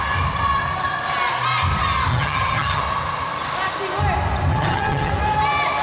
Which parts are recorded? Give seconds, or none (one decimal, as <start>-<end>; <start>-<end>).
0.0-2.1; 2.8-4.5; 5.1-5.8